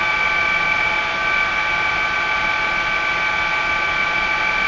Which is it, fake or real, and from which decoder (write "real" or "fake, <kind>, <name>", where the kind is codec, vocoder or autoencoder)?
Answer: real